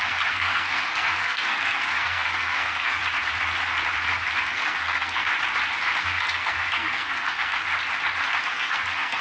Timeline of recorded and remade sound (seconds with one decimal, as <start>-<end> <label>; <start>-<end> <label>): 0.0-3.0 remade; 3.0-4.4 recorded; 4.4-5.3 remade; 5.3-6.0 recorded; 6.0-7.6 remade; 7.6-8.4 recorded; 8.4-9.2 remade